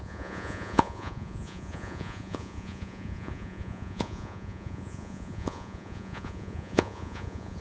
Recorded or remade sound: remade